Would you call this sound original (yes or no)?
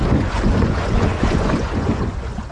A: no